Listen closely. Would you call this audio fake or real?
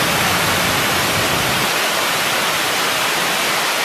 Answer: real